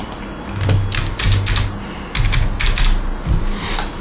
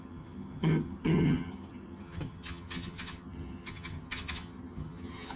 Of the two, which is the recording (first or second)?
first